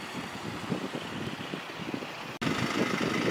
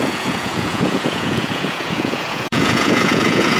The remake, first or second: second